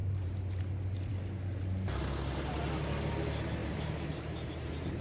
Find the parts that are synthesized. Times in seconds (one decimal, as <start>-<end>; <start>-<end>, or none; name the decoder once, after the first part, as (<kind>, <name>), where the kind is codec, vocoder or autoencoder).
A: 0.0-0.6 (vocoder, BigVGAN v2); 3.6-5.0

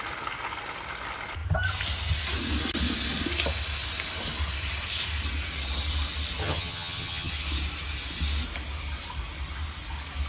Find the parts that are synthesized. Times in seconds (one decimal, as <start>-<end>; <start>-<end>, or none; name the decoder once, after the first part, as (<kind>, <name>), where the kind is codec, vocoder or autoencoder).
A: 6.4-7.3 (vocoder, HiFi-GAN)

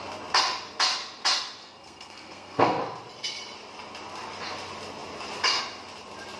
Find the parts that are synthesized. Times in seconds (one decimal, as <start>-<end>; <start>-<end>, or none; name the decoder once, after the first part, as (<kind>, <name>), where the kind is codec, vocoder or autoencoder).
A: 1.6-2.8 (codec, SNAC)

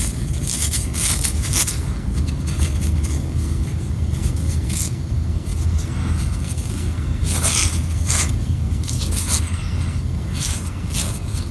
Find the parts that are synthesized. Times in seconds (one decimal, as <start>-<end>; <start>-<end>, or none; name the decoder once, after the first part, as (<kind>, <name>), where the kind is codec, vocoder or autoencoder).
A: 0.0-11.5 (codec, SNAC)

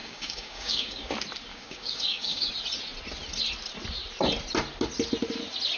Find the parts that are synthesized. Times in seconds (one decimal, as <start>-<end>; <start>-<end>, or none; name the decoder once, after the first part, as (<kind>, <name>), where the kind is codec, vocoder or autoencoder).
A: 0.0-1.1 (codec, DAC); 1.5-2.5

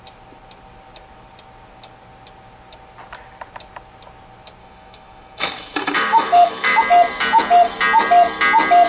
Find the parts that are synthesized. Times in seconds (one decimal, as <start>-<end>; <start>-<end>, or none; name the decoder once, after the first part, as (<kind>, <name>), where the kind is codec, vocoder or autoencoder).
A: 4.6-6.8 (autoencoder, DAC-VAE)

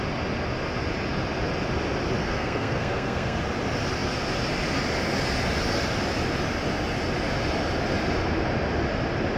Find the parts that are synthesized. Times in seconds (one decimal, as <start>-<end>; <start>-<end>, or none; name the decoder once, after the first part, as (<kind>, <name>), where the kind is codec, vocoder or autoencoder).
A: 2.2-3.4 (codec, SNAC)